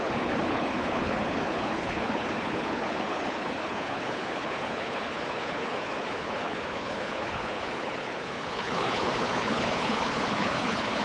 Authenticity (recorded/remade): remade